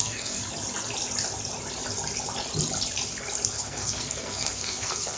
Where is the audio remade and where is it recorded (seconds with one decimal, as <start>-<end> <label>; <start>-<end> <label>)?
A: 0.0-0.4 remade; 0.4-3.5 recorded; 3.5-5.2 remade